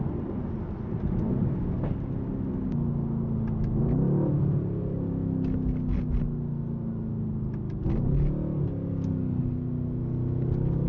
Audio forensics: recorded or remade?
recorded